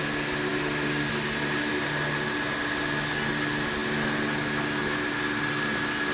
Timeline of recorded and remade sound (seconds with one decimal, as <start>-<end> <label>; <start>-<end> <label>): 0.0-6.1 recorded